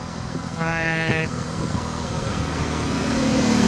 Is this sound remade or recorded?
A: remade